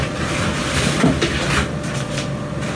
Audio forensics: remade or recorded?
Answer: recorded